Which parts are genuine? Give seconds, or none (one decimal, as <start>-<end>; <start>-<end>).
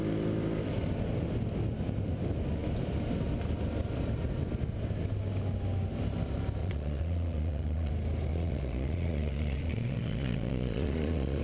0.0-6.6; 7.9-8.3